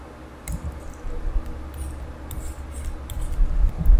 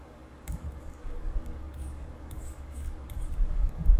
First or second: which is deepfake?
second